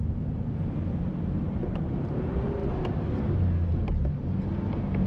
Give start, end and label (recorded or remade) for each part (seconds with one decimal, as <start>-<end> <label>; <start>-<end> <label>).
0.0-2.6 remade; 2.6-3.7 recorded; 3.7-5.1 remade